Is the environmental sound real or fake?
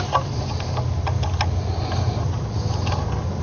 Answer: real